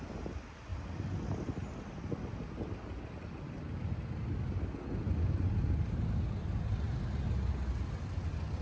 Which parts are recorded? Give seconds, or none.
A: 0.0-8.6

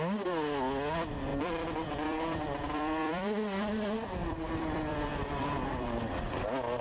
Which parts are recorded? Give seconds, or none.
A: 0.0-1.3; 3.7-4.2

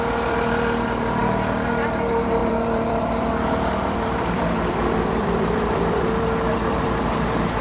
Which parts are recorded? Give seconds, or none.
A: 0.0-2.4; 7.0-7.6

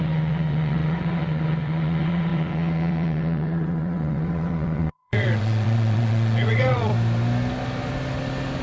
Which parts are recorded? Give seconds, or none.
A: 6.9-8.6

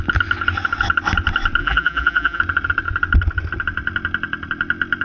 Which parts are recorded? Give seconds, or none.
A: 0.0-1.6; 2.4-5.0

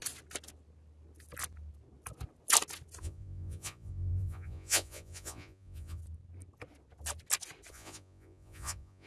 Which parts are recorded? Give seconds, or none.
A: 0.0-3.0; 6.0-7.7

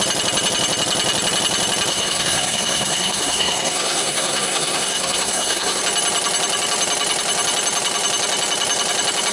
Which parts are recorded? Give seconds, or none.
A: 0.0-1.9; 5.8-9.3

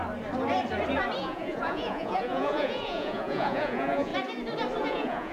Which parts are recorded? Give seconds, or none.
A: 0.0-1.2; 4.1-4.8